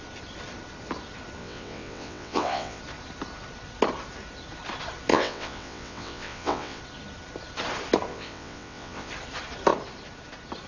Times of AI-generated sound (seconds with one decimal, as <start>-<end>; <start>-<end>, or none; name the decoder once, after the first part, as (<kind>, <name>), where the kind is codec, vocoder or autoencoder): 1.4-2.8 (vocoder, WaveNeXt); 5.1-6.8; 8.1-9.1